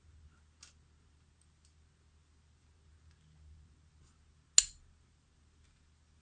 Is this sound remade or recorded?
recorded